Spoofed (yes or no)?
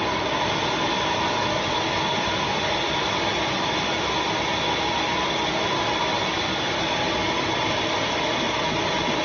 no